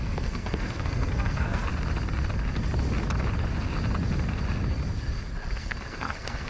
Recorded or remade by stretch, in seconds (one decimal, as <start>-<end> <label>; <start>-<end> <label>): 0.0-1.7 remade; 1.7-5.6 recorded; 5.6-6.5 remade